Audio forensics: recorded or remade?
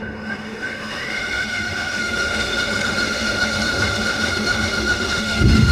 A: remade